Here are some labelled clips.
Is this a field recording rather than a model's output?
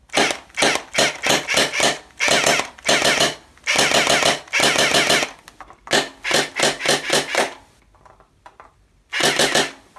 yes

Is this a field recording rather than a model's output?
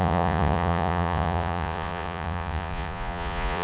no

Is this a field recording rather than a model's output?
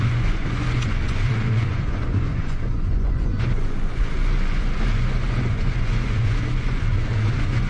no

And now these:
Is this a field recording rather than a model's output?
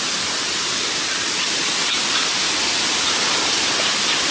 yes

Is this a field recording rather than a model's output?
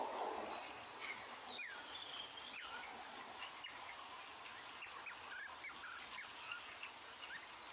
yes